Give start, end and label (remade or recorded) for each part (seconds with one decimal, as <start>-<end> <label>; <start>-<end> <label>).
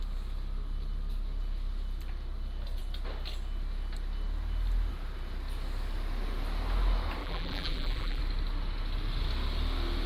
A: 0.0-7.2 recorded; 7.2-8.2 remade; 8.2-10.1 recorded